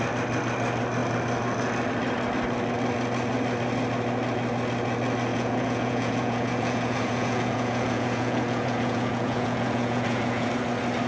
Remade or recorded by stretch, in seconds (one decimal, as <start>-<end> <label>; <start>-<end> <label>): 0.0-5.3 recorded; 5.3-10.5 remade; 10.5-11.1 recorded